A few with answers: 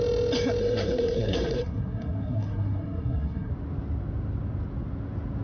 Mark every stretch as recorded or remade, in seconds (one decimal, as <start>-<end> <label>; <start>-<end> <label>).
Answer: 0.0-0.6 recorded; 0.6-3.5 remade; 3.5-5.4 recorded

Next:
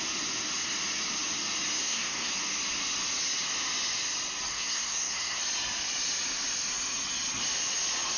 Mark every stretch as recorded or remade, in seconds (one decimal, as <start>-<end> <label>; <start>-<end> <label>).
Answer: 0.0-1.8 recorded; 1.8-2.3 remade; 2.3-4.5 recorded; 4.5-5.4 remade; 5.4-8.2 recorded

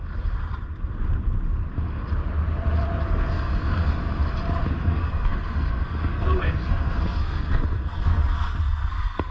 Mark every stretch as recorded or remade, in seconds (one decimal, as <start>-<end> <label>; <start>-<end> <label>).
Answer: 0.0-3.0 recorded; 3.0-4.0 remade; 4.0-4.7 recorded; 4.7-9.3 remade

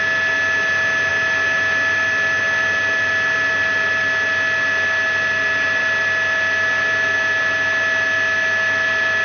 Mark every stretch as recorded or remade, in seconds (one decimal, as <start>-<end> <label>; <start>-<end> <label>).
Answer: 0.0-9.2 recorded

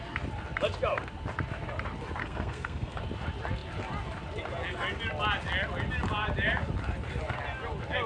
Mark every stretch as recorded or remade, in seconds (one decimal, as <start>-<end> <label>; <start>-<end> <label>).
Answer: 0.0-2.2 recorded; 2.2-3.0 remade; 3.0-8.1 recorded